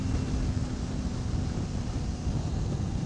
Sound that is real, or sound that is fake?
real